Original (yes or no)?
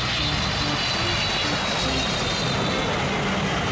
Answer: yes